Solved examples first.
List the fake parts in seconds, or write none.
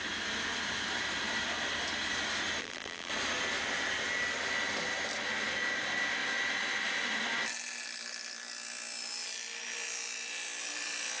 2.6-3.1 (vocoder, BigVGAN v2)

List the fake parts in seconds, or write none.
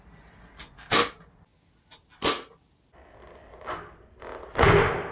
none